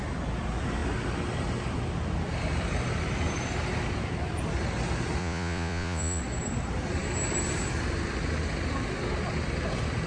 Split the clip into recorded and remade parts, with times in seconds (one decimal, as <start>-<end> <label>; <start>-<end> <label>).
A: 0.0-5.2 recorded; 5.2-6.2 remade; 6.2-10.1 recorded